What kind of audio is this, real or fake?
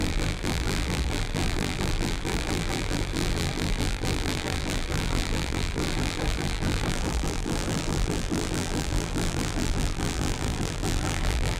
fake